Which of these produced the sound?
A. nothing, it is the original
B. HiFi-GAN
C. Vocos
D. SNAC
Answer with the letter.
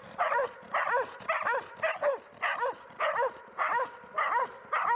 A